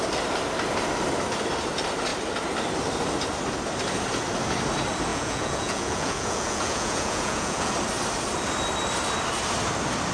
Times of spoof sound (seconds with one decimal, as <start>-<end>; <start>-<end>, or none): 5.1-7.7